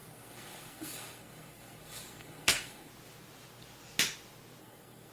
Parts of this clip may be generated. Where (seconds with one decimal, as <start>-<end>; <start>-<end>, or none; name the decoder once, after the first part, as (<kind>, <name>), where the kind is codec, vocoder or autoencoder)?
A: 0.0-2.9 (codec, SNAC); 4.6-5.1